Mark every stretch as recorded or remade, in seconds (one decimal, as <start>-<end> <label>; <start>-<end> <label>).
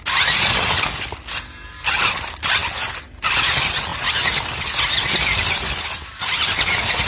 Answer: 0.0-7.1 recorded